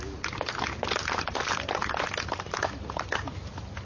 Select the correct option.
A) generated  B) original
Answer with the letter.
B